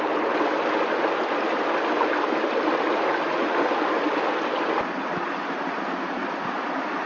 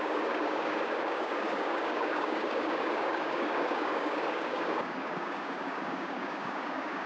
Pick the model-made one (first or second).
second